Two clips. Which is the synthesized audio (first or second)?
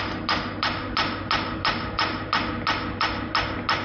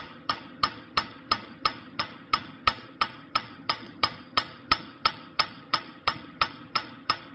second